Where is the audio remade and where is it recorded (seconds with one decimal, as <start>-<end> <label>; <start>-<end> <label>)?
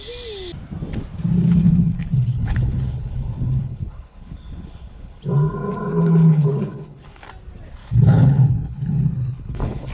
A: 0.0-1.6 recorded; 1.6-5.2 remade; 5.2-5.9 recorded; 5.9-7.1 remade; 7.1-7.8 recorded; 7.8-9.9 remade